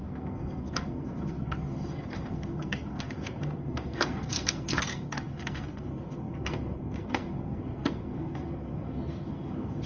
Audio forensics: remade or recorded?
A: remade